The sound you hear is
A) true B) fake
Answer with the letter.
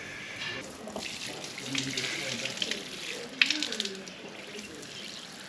A